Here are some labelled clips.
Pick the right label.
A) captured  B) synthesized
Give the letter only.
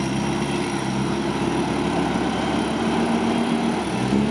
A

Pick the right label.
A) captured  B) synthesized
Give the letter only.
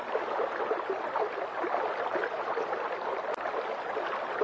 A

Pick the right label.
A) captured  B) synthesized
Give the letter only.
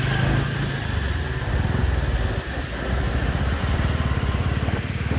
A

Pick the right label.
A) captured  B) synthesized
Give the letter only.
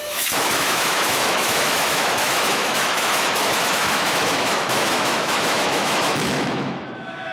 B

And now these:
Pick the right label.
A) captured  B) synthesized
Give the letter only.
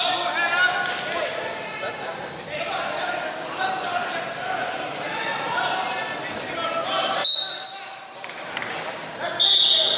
A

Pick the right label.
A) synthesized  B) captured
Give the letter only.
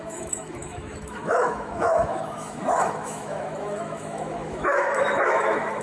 A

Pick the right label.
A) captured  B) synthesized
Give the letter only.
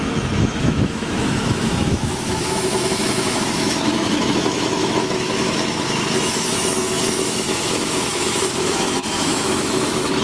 B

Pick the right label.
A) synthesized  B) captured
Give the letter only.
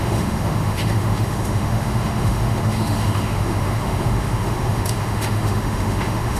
A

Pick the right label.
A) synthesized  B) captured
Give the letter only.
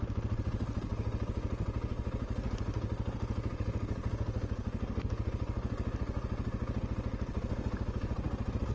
B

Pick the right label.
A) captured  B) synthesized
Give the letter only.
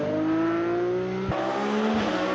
A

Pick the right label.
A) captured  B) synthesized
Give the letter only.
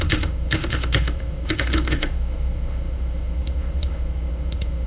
B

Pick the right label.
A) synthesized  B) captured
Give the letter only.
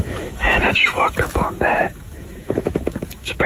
A